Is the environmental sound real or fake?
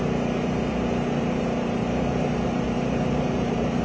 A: fake